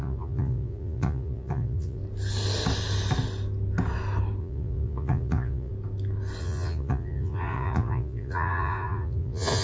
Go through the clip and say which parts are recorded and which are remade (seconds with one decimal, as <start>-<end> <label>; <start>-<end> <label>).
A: 0.0-2.0 remade; 2.0-4.4 recorded; 4.4-5.7 remade; 5.7-6.4 recorded; 6.4-9.6 remade